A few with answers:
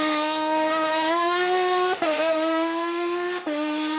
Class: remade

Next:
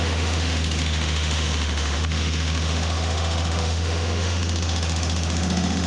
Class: remade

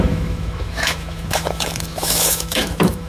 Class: remade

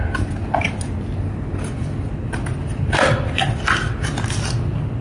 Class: recorded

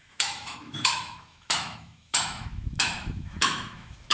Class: remade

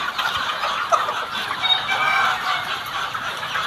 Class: recorded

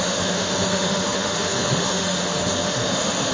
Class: remade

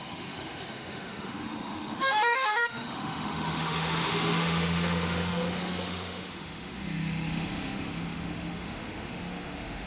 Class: remade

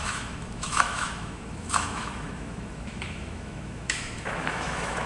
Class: remade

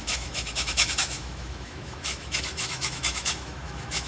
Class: remade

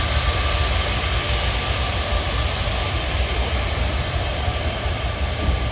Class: recorded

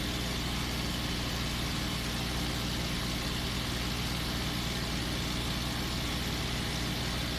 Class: recorded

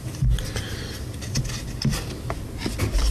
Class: recorded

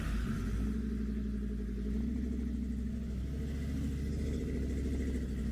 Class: recorded